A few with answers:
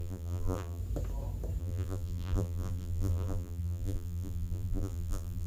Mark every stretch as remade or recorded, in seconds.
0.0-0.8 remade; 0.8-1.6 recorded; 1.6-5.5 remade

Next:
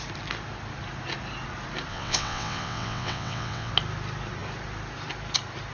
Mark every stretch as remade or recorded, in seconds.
0.0-1.9 recorded; 1.9-3.7 remade; 3.7-5.7 recorded

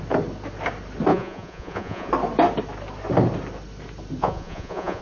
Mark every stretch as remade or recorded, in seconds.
0.0-1.1 recorded; 1.1-2.1 remade; 2.1-4.2 recorded; 4.2-5.0 remade

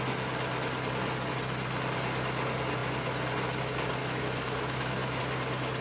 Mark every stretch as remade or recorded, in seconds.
0.0-4.0 recorded; 4.0-5.2 remade; 5.2-5.8 recorded

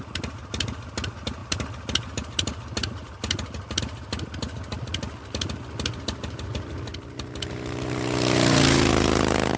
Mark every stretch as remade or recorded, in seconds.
0.0-9.6 recorded

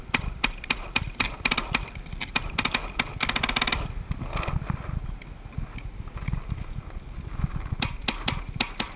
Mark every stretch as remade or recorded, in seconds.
0.0-2.8 remade; 2.8-8.0 recorded; 8.0-9.0 remade

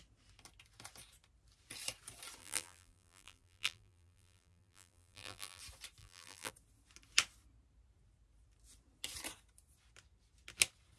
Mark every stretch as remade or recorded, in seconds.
0.0-2.4 recorded; 2.4-5.6 remade; 5.6-6.0 recorded; 6.0-6.5 remade; 6.5-11.0 recorded